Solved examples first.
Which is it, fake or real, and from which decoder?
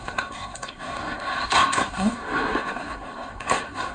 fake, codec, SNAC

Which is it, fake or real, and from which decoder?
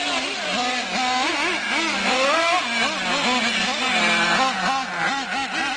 real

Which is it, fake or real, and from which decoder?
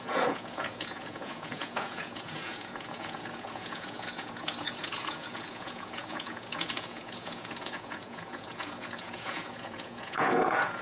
fake, vocoder, Vocos